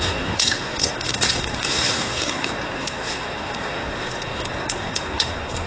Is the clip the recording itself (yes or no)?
no